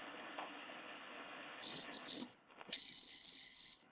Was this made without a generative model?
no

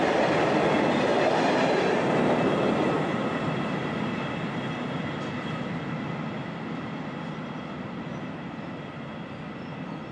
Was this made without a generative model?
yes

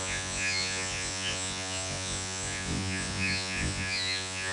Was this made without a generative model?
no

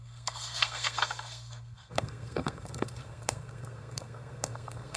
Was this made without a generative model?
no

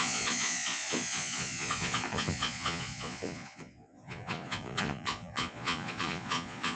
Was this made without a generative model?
no